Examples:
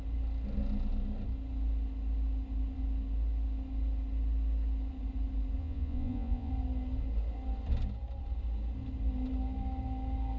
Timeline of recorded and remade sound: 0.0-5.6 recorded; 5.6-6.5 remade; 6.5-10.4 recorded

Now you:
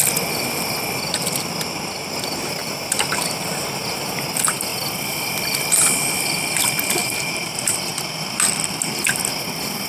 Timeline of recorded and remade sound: 0.0-2.6 recorded; 2.6-4.2 remade; 4.2-7.0 recorded; 7.0-7.9 remade; 7.9-9.9 recorded